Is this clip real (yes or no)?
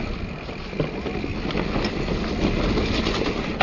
yes